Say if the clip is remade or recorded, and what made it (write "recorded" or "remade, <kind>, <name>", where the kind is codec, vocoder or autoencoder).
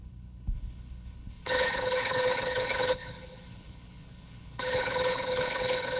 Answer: remade, codec, HILCodec